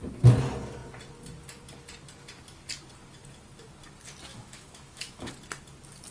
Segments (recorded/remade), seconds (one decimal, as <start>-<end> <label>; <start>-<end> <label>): 0.0-4.3 recorded; 4.3-5.3 remade; 5.3-6.1 recorded